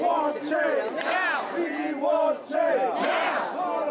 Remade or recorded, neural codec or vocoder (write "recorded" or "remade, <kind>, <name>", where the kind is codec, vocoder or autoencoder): recorded